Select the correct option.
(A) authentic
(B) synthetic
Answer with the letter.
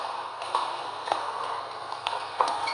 B